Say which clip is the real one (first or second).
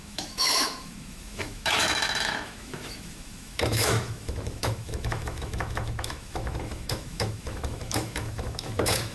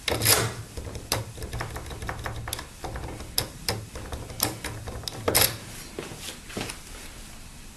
second